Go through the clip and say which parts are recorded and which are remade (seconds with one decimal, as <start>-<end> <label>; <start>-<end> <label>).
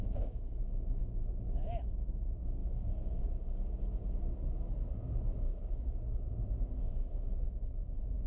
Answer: 0.0-2.6 remade; 2.6-6.9 recorded; 6.9-8.3 remade